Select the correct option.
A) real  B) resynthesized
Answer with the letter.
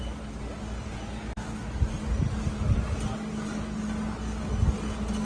A